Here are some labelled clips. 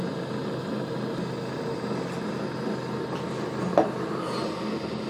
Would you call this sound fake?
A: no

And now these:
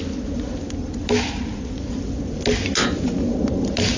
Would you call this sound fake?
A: no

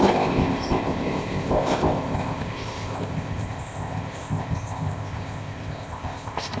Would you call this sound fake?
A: yes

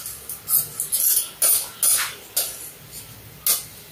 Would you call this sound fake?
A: no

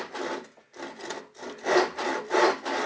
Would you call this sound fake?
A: no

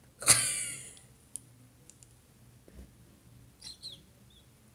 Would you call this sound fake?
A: no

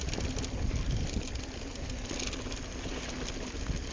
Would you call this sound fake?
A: no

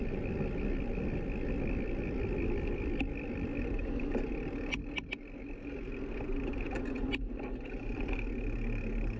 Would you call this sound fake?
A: no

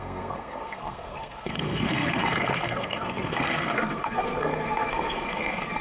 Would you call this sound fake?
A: yes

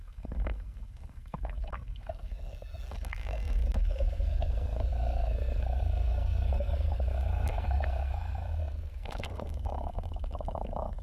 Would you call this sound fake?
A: yes